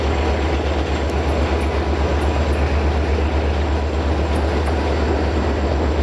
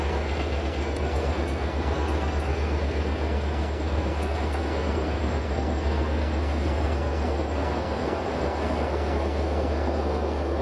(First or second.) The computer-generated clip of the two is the second